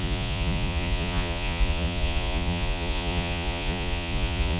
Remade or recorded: remade